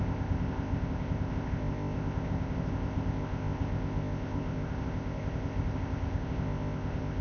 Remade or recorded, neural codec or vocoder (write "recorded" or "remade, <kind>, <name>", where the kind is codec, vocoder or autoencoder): remade, codec, ZipCodec